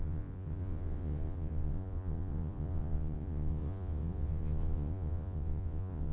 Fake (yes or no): yes